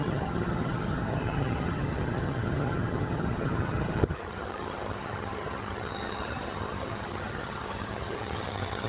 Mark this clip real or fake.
fake